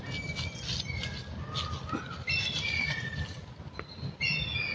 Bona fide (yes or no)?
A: yes